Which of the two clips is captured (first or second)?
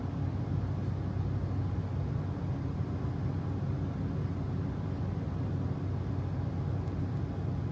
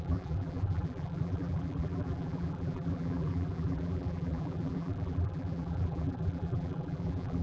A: first